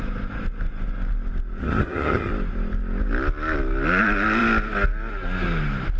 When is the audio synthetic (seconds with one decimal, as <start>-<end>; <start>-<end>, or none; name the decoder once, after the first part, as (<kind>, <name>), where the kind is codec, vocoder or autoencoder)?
1.6-2.3 (vocoder, HiFi-GAN)